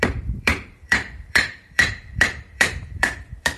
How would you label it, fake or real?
fake